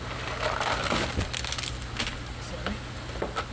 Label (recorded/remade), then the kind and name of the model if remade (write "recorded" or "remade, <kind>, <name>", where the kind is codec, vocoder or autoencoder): recorded